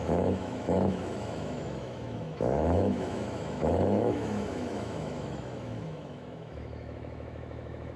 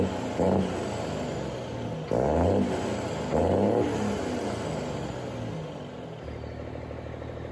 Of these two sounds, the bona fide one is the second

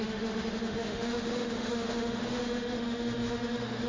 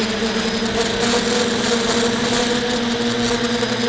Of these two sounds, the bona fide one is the second